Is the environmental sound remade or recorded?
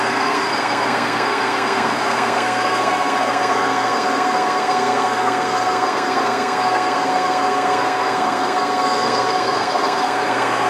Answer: remade